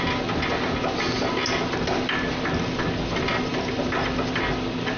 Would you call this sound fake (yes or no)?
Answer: no